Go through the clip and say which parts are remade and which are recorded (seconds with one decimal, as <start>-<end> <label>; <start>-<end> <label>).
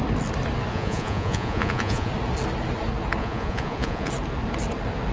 0.0-0.7 recorded; 0.7-2.1 remade; 2.1-3.2 recorded; 3.2-4.1 remade; 4.1-5.1 recorded